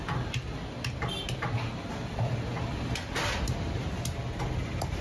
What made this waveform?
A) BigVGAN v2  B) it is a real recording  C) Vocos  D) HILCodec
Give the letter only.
B